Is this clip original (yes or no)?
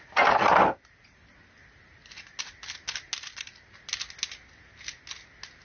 yes